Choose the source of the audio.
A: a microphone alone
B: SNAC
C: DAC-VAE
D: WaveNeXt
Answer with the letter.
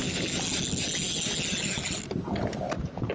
A